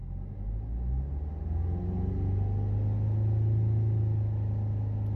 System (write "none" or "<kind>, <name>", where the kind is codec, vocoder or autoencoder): none